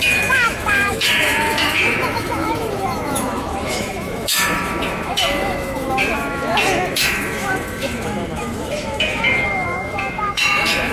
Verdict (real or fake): fake